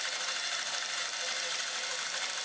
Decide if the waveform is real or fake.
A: real